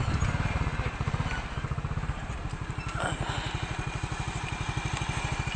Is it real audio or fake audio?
real